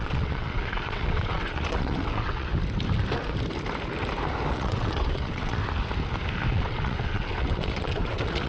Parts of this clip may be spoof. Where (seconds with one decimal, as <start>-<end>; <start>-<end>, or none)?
0.0-2.5; 4.5-5.6; 6.5-8.5